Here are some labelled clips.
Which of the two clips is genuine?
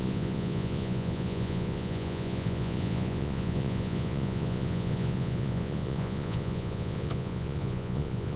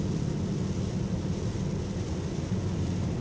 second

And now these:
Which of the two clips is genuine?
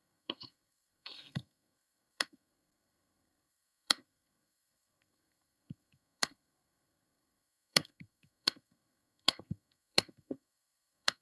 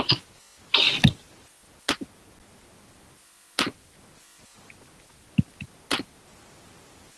second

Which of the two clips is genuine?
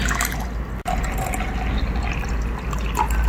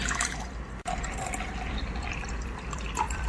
first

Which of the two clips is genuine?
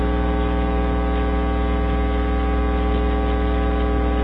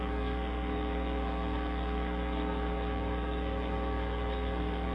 first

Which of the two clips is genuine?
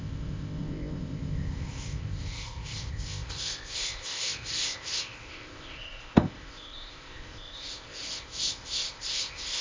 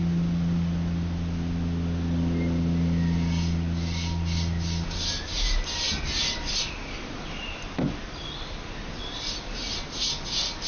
second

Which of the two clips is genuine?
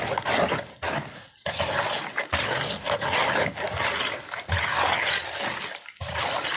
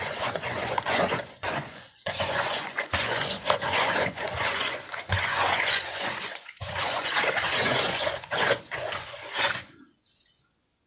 first